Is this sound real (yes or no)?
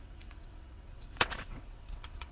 no